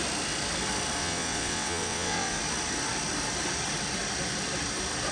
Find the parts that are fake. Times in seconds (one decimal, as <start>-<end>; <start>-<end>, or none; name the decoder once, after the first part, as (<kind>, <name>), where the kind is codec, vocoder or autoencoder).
1.0-2.4 (vocoder, WaveNeXt)